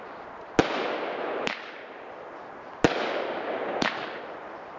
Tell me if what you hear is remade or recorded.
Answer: recorded